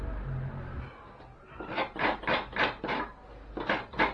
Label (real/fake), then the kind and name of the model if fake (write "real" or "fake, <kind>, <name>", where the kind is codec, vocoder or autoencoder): real